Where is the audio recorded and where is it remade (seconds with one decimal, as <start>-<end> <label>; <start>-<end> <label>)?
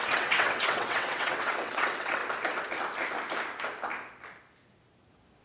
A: 0.0-2.2 remade; 2.2-5.4 recorded